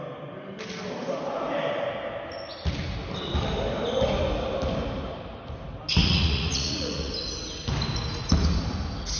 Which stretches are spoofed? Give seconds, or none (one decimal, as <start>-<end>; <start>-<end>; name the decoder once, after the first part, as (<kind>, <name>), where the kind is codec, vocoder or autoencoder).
6.0-7.1 (vocoder, Vocos)